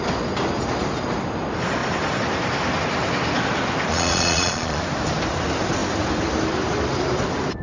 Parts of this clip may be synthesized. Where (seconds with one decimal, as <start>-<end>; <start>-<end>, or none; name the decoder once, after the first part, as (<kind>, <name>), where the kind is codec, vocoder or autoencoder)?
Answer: 3.9-4.8 (vocoder, Vocos)